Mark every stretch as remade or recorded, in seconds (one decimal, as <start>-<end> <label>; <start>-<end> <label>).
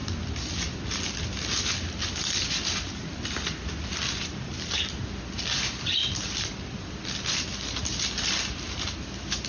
0.0-9.5 recorded